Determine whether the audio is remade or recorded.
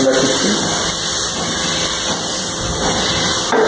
recorded